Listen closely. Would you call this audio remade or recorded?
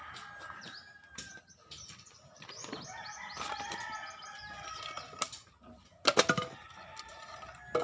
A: recorded